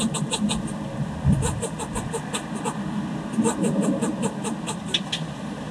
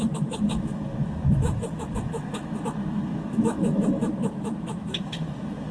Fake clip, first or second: second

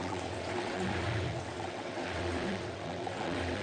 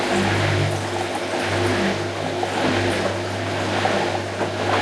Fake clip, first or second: first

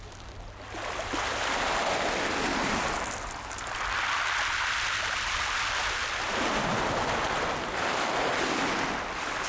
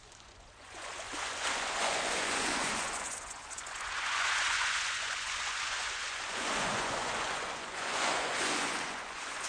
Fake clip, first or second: second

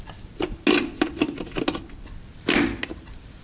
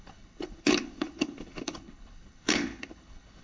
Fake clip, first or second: second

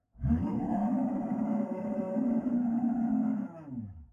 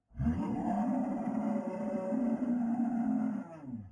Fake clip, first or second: first